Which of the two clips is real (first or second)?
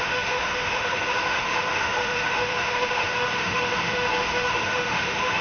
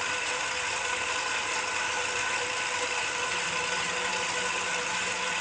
second